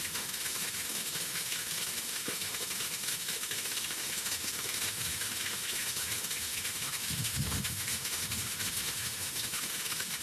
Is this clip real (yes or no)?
no